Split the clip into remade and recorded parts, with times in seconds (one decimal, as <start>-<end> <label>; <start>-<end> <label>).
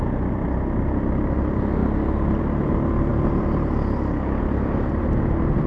0.0-5.7 recorded